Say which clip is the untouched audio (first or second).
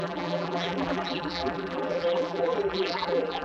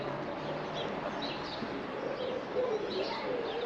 second